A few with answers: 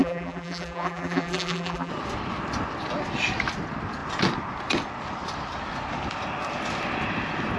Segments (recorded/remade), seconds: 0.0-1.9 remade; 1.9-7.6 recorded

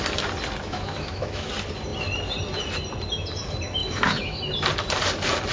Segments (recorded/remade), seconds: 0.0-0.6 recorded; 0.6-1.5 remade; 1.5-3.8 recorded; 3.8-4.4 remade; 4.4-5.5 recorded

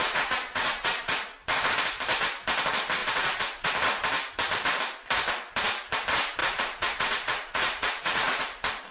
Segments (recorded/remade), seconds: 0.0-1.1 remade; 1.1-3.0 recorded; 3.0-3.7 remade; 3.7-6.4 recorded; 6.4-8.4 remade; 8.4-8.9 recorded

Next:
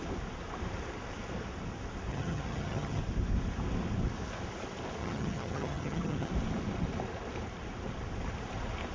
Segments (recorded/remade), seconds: 0.0-2.1 recorded; 2.1-3.0 remade; 3.0-5.0 recorded; 5.0-6.3 remade; 6.3-8.9 recorded